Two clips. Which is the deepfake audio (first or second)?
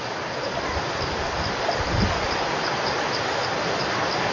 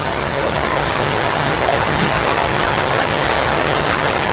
second